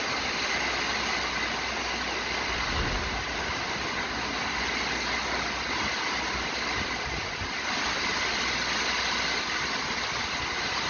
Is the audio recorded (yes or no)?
yes